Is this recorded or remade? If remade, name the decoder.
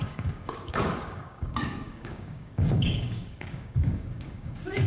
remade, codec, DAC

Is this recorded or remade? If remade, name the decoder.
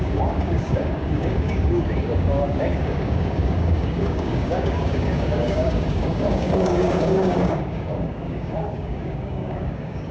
remade, codec, DAC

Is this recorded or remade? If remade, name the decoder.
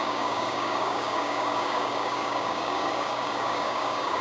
remade, codec, DAC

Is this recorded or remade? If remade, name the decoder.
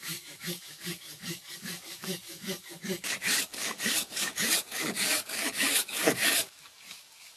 remade, codec, DAC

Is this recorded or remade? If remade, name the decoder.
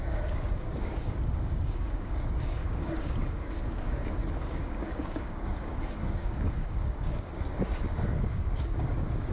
remade, codec, DAC